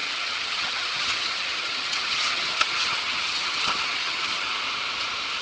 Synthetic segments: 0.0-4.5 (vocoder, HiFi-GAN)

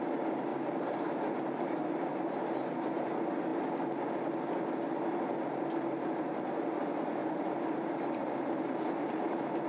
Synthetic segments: 7.2-8.2 (vocoder, BigVGAN v2)

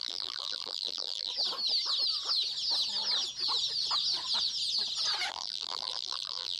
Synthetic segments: 0.0-1.3 (vocoder, BigVGAN v2); 5.3-6.6

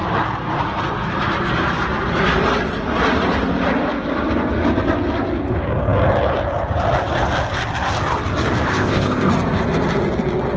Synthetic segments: 8.7-9.3 (codec, ZipCodec)

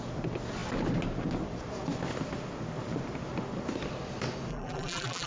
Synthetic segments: 4.5-5.3 (vocoder, BigVGAN v2)